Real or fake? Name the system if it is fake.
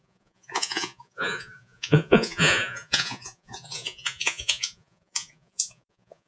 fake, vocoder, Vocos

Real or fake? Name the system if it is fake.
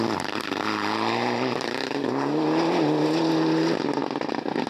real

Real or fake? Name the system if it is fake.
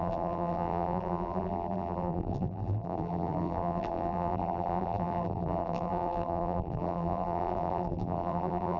fake, vocoder, BigVGAN v2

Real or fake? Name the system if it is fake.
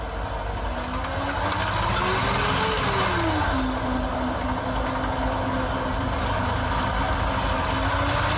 real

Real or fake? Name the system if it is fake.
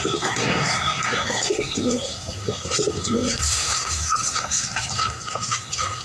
fake, codec, SNAC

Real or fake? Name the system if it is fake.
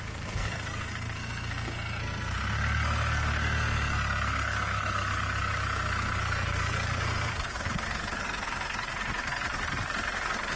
fake, codec, SNAC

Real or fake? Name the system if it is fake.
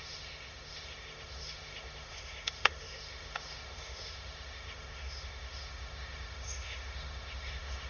fake, autoencoder, DAC-VAE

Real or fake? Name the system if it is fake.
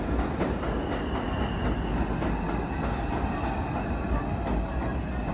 real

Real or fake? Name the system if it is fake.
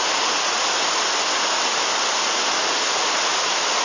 real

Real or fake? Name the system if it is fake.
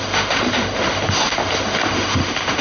fake, autoencoder, DAC-VAE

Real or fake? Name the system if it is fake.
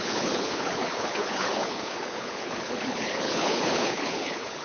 fake, codec, HILCodec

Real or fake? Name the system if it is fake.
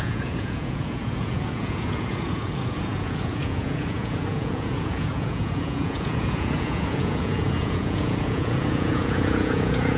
fake, vocoder, Vocos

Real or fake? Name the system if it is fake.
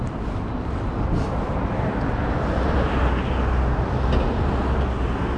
real